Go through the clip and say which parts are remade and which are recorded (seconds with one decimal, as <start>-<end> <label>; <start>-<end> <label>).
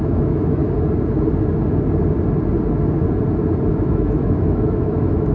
0.0-0.6 remade; 0.6-3.7 recorded; 3.7-5.3 remade